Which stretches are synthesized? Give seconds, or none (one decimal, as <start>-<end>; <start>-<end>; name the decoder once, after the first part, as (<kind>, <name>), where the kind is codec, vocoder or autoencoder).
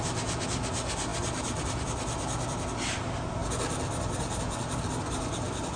none